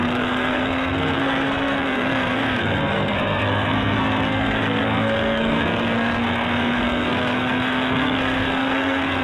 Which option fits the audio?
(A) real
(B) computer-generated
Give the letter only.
B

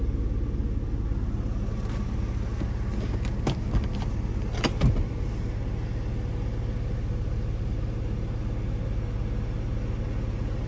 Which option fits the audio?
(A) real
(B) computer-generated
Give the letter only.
A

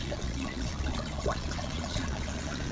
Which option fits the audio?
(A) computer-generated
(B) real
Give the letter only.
A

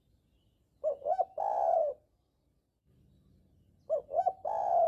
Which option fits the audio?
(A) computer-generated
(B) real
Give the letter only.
B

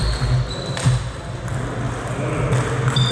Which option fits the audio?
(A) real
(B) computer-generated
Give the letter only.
A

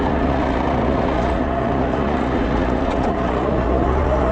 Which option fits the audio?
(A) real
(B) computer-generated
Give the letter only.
B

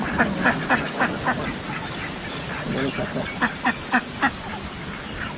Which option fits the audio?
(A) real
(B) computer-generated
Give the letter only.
A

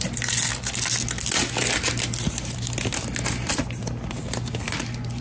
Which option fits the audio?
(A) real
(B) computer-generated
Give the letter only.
A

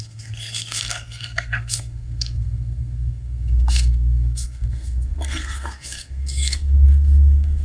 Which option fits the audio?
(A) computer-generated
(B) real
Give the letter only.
A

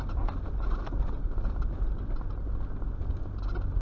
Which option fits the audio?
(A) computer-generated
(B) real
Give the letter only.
B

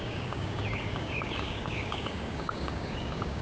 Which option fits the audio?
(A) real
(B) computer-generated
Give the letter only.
B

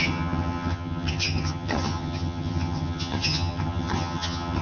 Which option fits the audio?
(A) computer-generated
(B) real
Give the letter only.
A